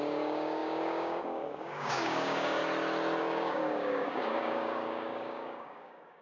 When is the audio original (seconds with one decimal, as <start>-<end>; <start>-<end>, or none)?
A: 2.6-3.2